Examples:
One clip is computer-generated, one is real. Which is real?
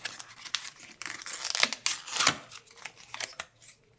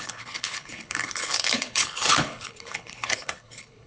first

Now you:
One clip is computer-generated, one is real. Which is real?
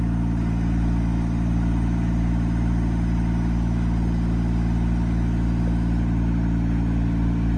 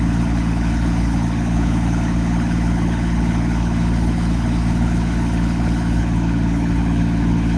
first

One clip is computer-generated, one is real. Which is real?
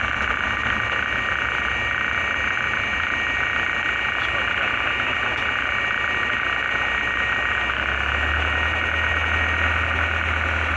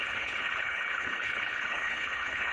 first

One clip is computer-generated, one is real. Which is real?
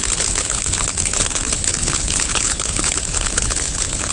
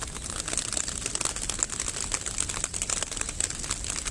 second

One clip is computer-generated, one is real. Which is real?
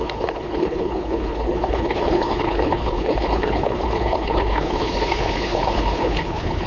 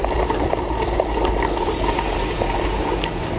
second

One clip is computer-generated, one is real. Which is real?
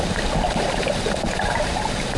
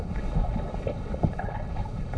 first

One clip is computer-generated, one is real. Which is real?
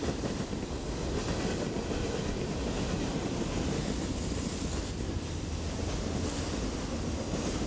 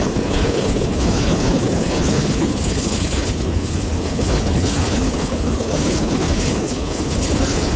first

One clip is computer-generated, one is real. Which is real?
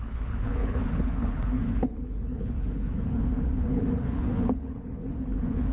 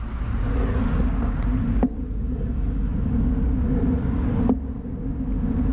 second